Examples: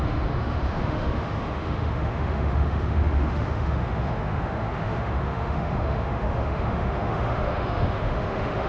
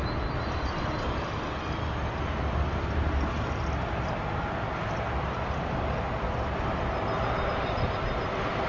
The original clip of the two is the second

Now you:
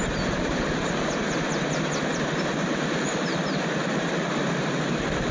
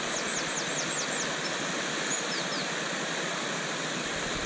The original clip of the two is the second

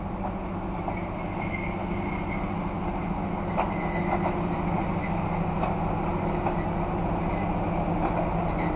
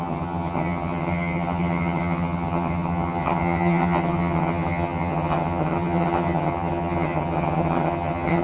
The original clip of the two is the first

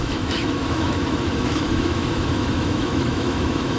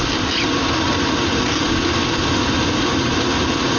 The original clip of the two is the second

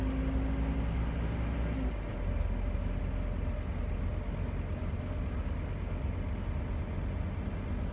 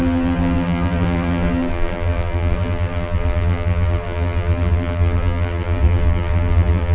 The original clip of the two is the first